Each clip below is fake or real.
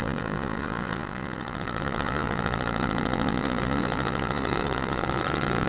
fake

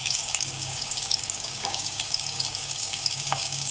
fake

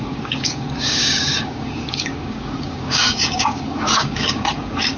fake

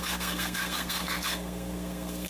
fake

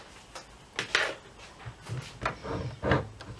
real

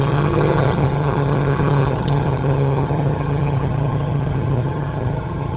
fake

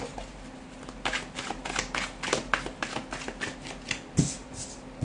real